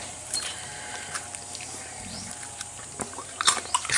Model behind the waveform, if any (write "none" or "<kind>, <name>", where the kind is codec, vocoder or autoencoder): vocoder, BigVGAN v2